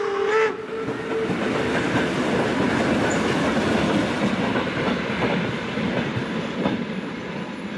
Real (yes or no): yes